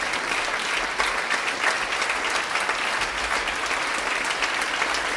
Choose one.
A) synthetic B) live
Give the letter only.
B